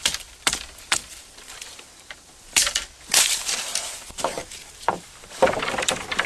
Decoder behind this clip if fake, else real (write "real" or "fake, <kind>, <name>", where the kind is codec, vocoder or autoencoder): fake, vocoder, BigVGAN v2